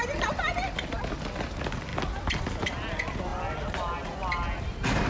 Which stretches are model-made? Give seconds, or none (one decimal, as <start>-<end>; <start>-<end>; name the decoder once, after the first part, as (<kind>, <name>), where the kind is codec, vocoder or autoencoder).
none